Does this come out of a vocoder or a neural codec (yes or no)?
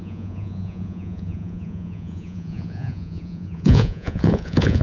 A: yes